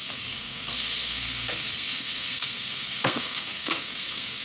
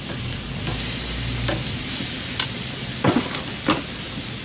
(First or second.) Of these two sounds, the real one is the second